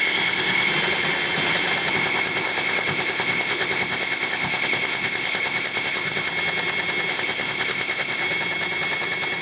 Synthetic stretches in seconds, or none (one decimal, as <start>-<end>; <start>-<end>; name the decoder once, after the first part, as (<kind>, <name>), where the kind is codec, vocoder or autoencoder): 0.0-0.7 (codec, ZipCodec); 1.9-6.3; 7.1-8.2